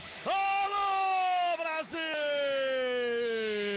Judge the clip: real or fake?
fake